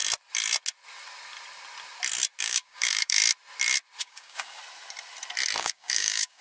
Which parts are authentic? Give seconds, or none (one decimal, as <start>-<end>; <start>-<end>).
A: 0.0-2.4; 3.2-4.0; 4.6-5.6